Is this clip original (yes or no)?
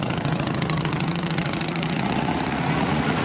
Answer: no